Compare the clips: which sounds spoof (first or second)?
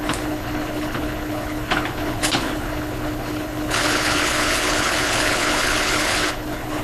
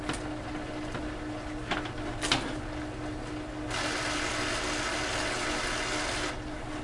first